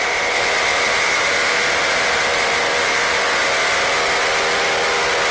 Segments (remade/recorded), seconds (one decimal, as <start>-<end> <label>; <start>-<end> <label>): 0.0-3.2 remade; 3.2-5.3 recorded